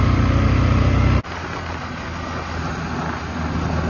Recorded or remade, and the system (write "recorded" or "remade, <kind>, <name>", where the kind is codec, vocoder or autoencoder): recorded